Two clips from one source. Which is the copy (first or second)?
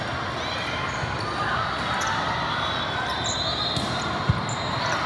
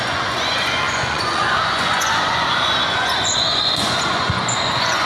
second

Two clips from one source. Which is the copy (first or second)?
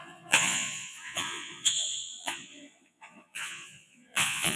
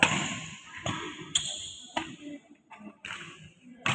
first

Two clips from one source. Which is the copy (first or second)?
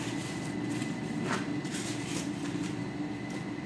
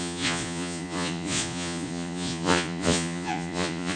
second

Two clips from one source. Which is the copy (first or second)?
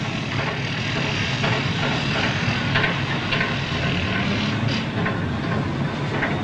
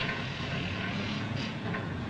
second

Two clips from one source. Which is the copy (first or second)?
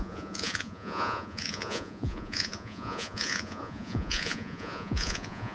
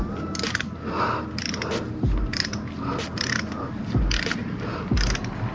first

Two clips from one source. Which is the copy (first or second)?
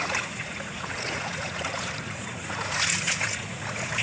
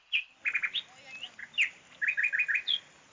first